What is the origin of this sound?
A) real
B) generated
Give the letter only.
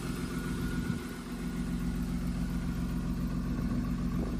A